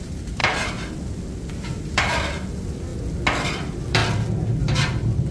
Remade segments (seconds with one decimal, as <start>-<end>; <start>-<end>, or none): 0.0-2.9; 3.5-4.0; 4.6-5.3